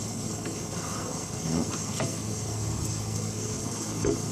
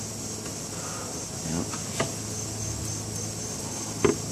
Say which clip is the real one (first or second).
second